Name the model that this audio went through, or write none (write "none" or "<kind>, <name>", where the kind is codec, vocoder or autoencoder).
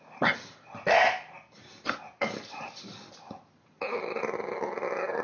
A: vocoder, BigVGAN v2